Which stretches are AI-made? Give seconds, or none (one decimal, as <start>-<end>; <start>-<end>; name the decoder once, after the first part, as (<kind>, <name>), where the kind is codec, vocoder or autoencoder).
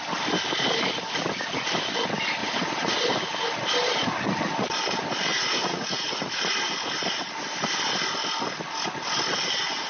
2.4-3.0 (vocoder, Vocos); 5.3-6.9